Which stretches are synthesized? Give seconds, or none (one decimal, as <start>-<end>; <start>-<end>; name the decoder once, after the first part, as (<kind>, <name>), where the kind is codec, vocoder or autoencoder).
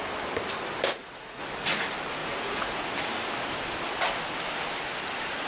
0.9-1.4 (vocoder, Vocos); 2.2-2.8